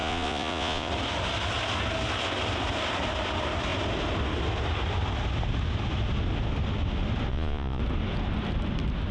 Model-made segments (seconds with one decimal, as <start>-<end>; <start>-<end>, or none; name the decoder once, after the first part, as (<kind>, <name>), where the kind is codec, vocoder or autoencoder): 0.0-0.9 (vocoder, Vocos); 7.3-7.8